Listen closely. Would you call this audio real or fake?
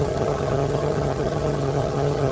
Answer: fake